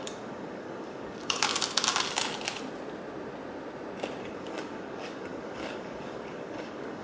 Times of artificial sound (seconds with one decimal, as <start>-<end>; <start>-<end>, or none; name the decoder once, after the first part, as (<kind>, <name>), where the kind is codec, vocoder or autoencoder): 0.0-1.5 (codec, DAC); 4.2-7.0